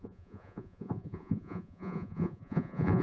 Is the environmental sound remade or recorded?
remade